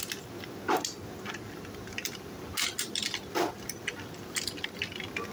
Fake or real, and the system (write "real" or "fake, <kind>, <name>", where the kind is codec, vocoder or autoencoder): real